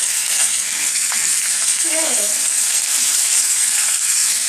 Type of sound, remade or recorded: remade